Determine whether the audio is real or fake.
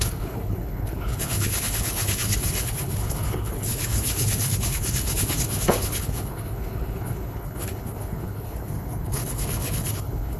fake